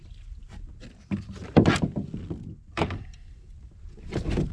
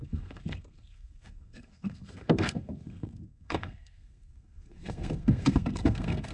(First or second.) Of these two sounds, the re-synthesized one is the second